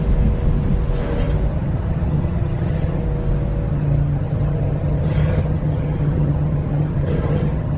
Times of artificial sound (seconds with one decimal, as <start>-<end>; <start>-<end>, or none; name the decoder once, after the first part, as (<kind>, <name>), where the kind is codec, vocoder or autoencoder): 1.5-3.0 (vocoder, HiFi-GAN); 3.7-7.8